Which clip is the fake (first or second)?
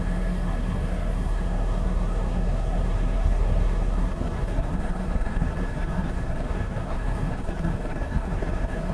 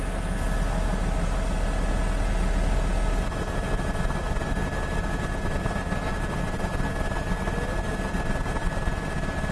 first